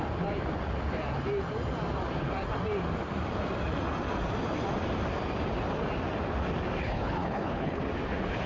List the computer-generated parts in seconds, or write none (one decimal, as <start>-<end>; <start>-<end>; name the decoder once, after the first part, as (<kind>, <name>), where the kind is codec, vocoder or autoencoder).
6.8-7.8 (codec, HILCodec)